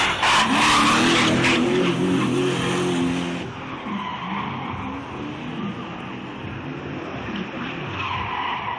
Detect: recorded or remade recorded